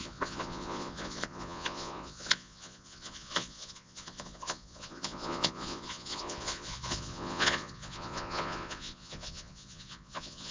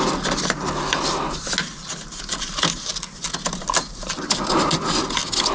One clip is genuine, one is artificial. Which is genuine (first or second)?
second